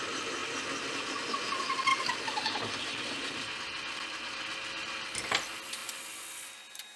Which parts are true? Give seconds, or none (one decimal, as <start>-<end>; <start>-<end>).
0.0-1.9; 2.7-7.0